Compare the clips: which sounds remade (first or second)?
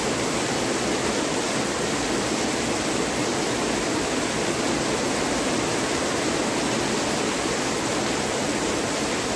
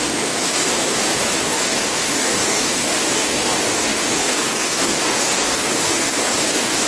second